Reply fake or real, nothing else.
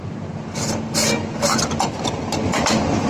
real